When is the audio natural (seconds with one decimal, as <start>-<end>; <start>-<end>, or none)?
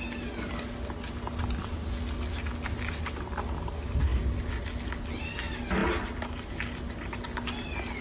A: 0.0-8.0